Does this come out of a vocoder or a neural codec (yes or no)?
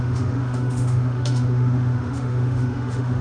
yes